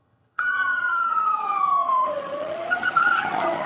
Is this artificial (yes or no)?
yes